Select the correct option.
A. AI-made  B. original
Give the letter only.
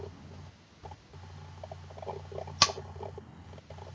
B